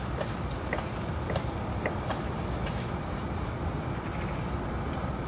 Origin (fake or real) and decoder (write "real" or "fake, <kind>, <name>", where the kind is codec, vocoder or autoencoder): real